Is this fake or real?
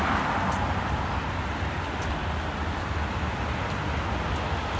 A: real